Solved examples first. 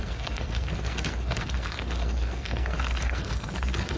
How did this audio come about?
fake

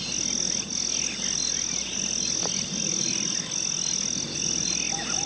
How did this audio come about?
real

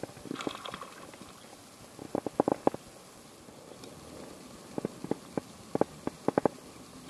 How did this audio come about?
real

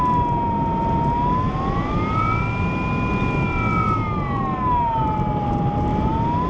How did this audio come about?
real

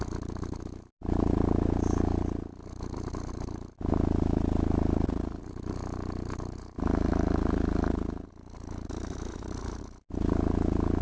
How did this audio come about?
real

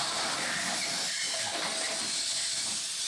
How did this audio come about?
real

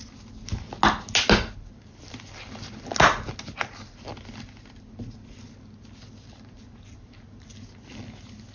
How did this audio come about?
real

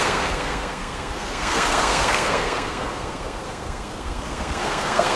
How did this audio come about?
fake